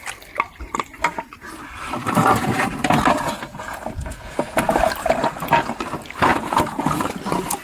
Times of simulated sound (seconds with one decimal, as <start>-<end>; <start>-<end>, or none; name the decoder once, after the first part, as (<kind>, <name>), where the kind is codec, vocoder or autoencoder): 3.5-4.7 (vocoder, Vocos); 6.3-7.0